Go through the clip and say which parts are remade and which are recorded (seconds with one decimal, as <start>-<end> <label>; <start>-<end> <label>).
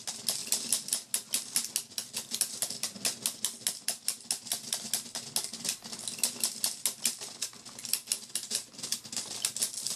0.0-10.0 recorded